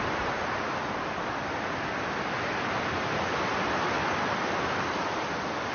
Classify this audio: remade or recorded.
recorded